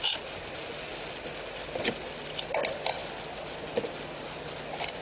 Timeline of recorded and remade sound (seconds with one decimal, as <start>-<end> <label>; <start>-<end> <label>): 0.0-5.0 recorded